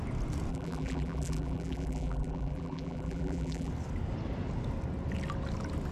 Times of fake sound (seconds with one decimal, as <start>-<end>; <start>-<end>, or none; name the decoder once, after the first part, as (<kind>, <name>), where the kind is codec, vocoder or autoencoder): 0.5-3.7 (vocoder, BigVGAN v2)